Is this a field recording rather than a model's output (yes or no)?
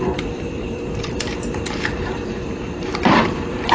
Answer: no